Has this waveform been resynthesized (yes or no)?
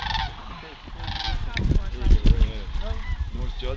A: no